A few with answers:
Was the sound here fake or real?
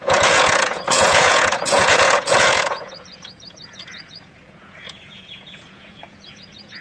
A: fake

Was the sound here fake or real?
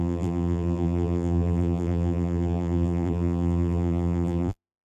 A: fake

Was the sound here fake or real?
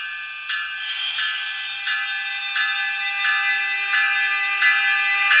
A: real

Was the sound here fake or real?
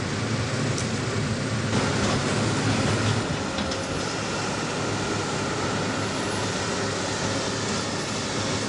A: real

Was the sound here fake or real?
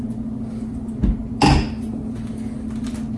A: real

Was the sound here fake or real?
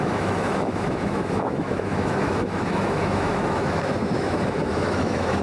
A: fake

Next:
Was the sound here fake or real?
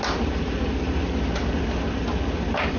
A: real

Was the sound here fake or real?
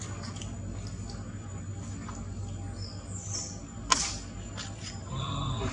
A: real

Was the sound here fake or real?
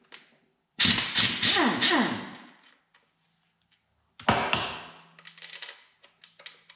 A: real